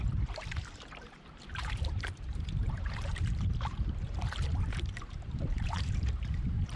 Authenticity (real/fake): fake